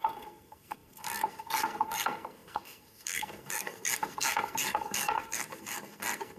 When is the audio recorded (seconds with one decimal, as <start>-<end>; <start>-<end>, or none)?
none